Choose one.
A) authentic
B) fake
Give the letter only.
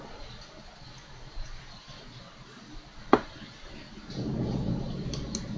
A